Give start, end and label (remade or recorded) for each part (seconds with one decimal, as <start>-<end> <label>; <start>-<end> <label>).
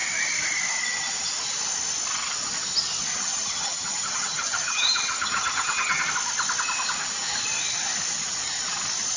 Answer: 0.0-3.1 recorded; 3.1-6.1 remade; 6.1-9.2 recorded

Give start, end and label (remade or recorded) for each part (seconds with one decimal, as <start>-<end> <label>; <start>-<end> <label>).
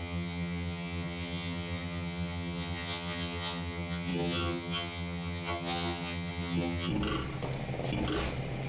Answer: 0.0-6.9 remade; 6.9-8.7 recorded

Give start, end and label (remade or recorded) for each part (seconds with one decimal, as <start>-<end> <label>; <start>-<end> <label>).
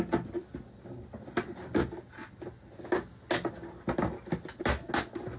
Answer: 0.0-5.4 recorded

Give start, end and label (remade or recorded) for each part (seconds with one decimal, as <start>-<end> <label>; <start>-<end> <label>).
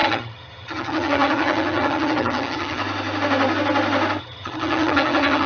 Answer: 0.0-2.8 remade; 2.8-4.2 recorded; 4.2-5.5 remade